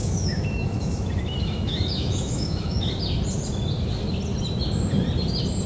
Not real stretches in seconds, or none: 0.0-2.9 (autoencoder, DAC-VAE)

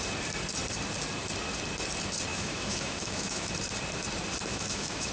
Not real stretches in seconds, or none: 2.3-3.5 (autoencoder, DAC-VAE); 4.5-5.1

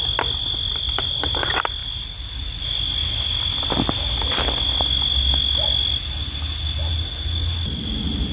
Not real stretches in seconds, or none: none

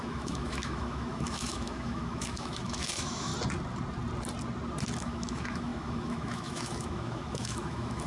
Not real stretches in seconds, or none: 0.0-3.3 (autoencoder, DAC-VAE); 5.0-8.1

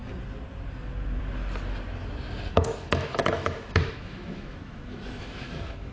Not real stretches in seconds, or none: 2.5-5.9 (autoencoder, DAC-VAE)